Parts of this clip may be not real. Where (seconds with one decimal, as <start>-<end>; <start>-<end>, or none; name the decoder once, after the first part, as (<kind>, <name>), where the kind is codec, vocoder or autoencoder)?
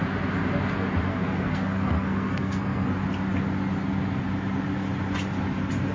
1.1-2.9 (codec, SNAC)